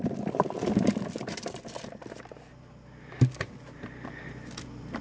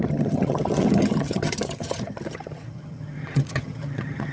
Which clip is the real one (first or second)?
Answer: first